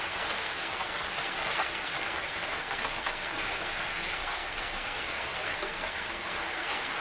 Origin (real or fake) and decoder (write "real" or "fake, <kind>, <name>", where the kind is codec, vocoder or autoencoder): fake, codec, SNAC